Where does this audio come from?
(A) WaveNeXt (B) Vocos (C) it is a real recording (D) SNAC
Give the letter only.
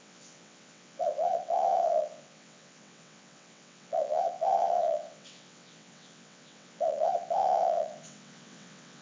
A